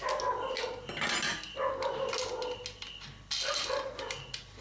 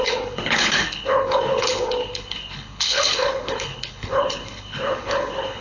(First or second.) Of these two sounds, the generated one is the second